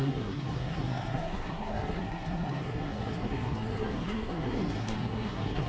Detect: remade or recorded remade